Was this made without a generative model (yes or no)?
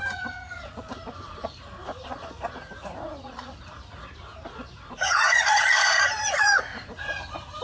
no